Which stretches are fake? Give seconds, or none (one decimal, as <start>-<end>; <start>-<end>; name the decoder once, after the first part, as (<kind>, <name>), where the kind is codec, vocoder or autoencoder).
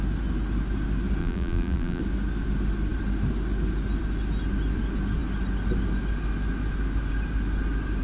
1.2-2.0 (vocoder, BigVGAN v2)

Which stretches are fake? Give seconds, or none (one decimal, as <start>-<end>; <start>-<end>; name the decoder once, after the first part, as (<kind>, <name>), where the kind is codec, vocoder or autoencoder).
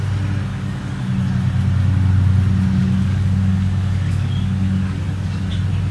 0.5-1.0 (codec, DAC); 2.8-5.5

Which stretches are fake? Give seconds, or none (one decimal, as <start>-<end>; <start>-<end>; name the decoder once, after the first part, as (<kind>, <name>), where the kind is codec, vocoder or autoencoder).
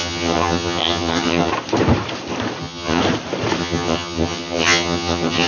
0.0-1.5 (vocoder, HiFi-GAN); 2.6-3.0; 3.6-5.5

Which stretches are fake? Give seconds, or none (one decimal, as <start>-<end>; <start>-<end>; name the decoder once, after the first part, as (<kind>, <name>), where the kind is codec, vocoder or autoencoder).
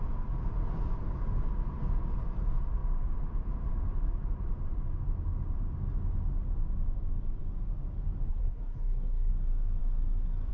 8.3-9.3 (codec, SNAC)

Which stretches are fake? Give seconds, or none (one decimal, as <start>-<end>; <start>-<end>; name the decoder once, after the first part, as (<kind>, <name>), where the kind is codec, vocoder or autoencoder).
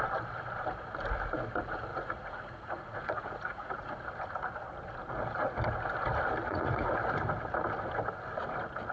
1.9-3.9 (vocoder, Vocos); 6.4-6.9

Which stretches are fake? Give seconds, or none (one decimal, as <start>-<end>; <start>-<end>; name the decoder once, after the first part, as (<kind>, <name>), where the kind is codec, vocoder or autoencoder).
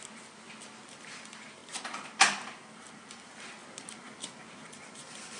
0.8-1.6 (vocoder, BigVGAN v2); 3.1-3.6; 4.7-5.4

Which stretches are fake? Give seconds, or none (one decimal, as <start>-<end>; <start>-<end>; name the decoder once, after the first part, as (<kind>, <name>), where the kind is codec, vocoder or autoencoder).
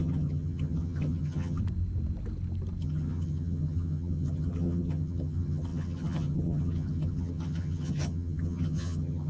0.0-1.6 (vocoder, HiFi-GAN); 2.8-9.3